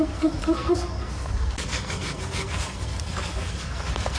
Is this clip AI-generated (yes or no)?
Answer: yes